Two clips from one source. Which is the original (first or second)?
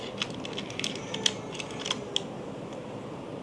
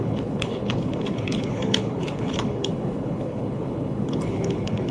first